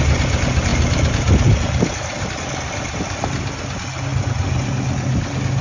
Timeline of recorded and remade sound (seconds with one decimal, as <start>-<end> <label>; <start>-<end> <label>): 0.0-5.6 recorded